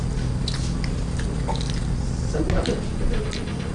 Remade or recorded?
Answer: recorded